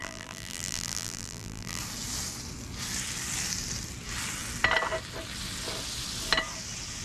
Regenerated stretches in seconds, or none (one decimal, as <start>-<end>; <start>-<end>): 0.0-1.8